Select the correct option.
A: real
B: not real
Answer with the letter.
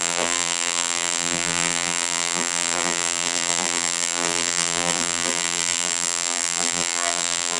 B